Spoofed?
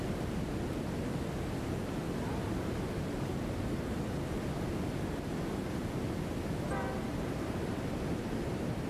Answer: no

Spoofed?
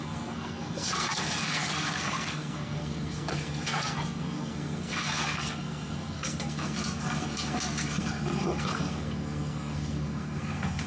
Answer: yes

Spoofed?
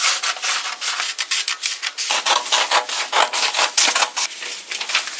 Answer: no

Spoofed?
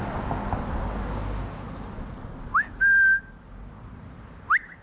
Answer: no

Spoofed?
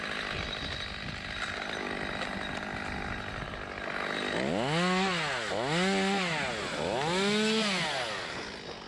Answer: no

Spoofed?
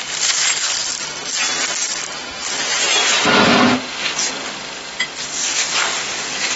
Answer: no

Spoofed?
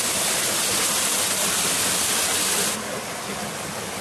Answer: no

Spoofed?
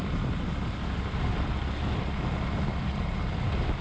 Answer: no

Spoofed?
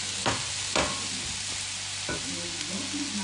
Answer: no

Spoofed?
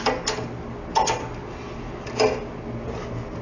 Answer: no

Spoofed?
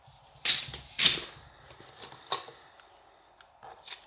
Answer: no